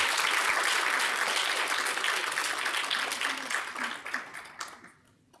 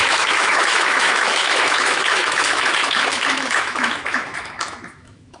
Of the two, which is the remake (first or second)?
second